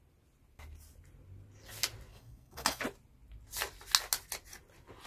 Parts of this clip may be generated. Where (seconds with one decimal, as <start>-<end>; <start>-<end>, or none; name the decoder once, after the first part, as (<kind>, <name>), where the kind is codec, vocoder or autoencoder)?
2.1-2.8 (codec, SNAC)